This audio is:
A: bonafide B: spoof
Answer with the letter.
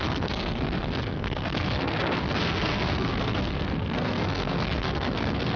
B